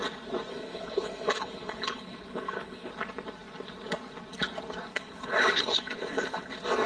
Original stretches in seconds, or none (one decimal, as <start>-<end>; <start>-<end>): 0.0-0.5; 2.9-4.9; 6.5-6.9